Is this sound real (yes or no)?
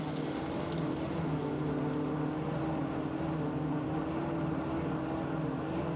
yes